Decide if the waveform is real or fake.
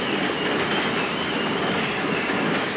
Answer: real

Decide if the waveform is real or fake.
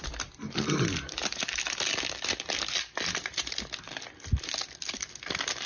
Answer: real